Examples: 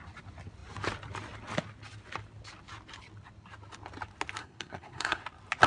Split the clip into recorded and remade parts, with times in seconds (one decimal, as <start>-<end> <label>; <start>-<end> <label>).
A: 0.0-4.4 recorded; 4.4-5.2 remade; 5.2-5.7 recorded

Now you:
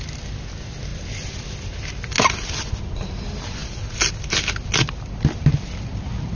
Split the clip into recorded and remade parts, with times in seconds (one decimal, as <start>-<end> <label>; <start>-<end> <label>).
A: 0.0-6.4 recorded

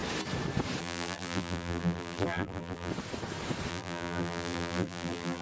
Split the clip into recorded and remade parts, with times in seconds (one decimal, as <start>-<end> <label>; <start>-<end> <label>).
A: 0.0-0.8 recorded; 0.8-2.9 remade; 2.9-3.7 recorded; 3.7-5.4 remade

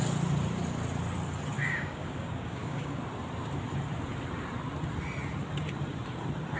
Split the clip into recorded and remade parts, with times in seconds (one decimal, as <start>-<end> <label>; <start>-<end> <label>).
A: 0.0-1.6 recorded; 1.6-3.0 remade; 3.0-6.6 recorded

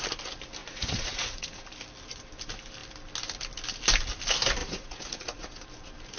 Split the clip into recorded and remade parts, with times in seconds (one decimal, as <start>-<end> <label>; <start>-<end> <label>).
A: 0.0-0.6 recorded; 0.6-1.6 remade; 1.6-4.6 recorded; 4.6-5.6 remade; 5.6-6.2 recorded

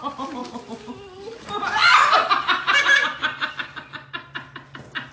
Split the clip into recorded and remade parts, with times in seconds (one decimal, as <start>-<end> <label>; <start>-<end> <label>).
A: 0.0-5.1 recorded

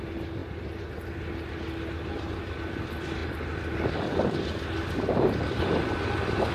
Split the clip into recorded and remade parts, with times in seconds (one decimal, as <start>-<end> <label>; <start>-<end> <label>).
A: 0.0-6.5 recorded

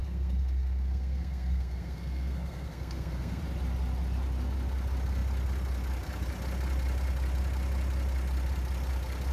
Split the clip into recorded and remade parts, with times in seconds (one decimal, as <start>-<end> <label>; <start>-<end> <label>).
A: 0.0-3.4 remade; 3.4-9.3 recorded